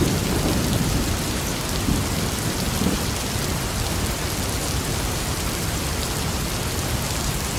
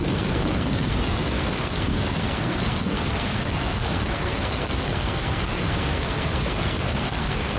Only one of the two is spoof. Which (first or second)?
second